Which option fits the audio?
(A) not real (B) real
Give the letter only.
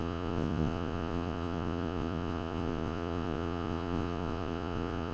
A